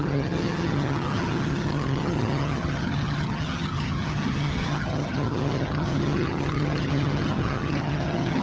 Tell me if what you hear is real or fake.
fake